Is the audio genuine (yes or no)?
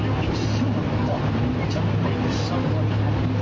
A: yes